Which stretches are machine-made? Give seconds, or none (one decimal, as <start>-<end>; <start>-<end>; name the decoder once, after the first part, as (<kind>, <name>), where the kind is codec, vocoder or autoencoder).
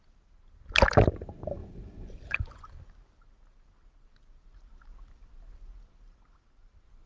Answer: 1.6-2.8 (vocoder, Vocos)